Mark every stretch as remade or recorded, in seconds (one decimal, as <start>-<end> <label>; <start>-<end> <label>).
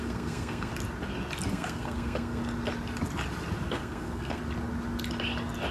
0.0-0.7 remade; 0.7-1.5 recorded; 1.5-2.4 remade; 2.4-3.7 recorded; 3.7-4.4 remade; 4.4-5.7 recorded